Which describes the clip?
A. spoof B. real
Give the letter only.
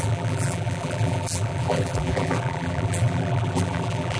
A